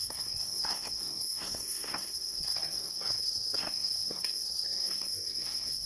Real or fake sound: fake